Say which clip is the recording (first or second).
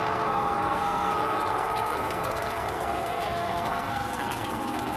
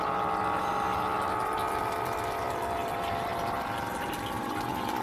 second